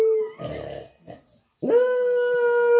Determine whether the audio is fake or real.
real